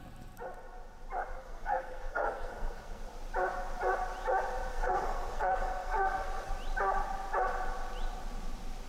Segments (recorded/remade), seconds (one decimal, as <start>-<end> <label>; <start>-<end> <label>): 0.0-1.4 recorded; 1.4-3.0 remade; 3.0-4.7 recorded; 4.7-6.5 remade; 6.5-8.9 recorded